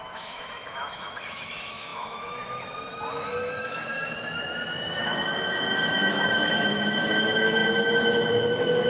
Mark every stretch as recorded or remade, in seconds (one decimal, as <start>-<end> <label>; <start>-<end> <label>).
0.0-8.9 remade